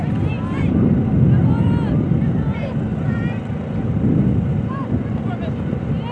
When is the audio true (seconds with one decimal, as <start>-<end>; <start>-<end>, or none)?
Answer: 0.0-6.1